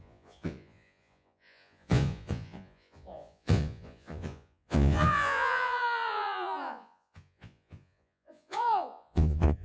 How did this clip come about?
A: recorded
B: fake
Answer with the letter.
B